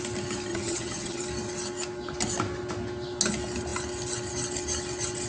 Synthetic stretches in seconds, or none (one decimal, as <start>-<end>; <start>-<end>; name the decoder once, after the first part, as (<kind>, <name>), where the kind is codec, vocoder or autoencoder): 0.5-1.2 (vocoder, HiFi-GAN)